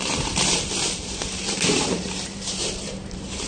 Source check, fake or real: fake